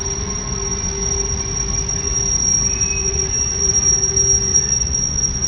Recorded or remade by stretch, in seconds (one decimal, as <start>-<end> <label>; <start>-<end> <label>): 0.0-3.0 recorded; 3.0-3.7 remade; 3.7-4.5 recorded; 4.5-5.5 remade